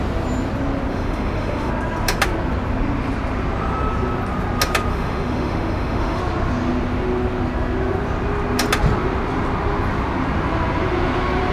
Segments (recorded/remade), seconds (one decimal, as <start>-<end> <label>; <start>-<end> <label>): 0.0-0.9 recorded; 0.9-1.7 remade; 1.7-4.9 recorded; 4.9-6.2 remade; 6.2-11.5 recorded